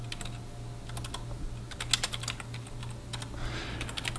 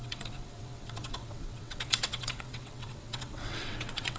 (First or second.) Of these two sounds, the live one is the first